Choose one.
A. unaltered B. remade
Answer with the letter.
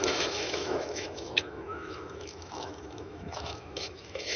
B